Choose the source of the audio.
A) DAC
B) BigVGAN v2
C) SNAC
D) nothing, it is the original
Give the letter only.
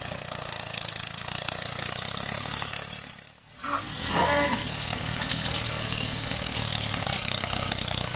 C